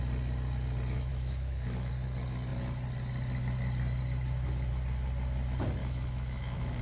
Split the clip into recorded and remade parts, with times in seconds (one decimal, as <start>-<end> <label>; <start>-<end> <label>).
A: 0.0-1.1 recorded; 1.1-1.9 remade; 1.9-5.8 recorded; 5.8-6.8 remade